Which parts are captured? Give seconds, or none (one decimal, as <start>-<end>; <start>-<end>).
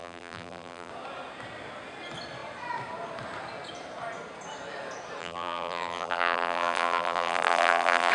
0.9-5.2